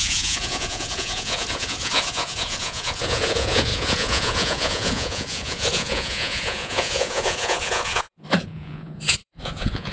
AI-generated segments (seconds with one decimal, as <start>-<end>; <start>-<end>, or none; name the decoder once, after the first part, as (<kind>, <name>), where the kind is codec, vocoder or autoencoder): 0.0-9.9 (vocoder, Vocos)